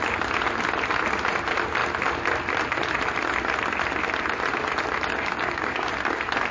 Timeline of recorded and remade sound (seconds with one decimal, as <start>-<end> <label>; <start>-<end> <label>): 0.0-5.1 recorded; 5.1-5.9 remade; 5.9-6.5 recorded